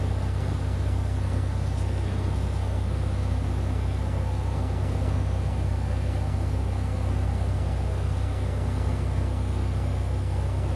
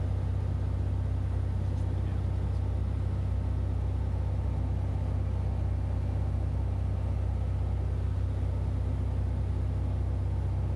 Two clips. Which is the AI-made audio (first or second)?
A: first